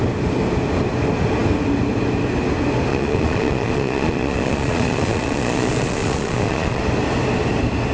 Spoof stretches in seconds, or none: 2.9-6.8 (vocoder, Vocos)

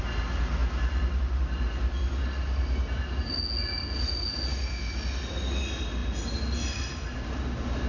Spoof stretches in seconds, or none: none

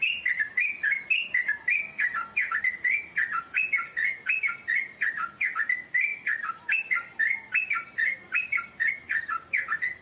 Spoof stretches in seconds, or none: 6.1-8.9 (vocoder, BigVGAN v2)

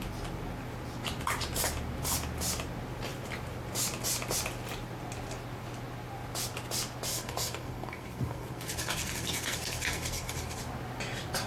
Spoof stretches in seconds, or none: 7.1-10.6 (codec, SNAC)

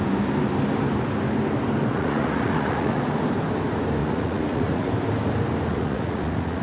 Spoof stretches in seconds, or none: 1.9-3.0 (vocoder, Vocos); 4.0-4.9; 5.7-6.6

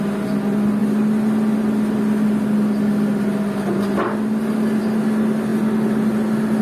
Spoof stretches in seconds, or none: none

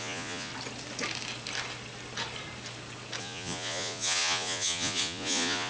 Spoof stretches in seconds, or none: 0.0-0.5 (vocoder, Vocos); 3.2-5.7